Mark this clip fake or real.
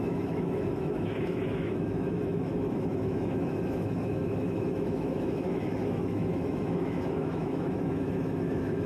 fake